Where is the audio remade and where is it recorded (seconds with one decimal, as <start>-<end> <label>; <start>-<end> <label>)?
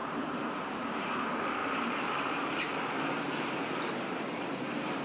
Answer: 0.0-1.2 remade; 1.2-1.6 recorded; 1.6-4.6 remade; 4.6-5.0 recorded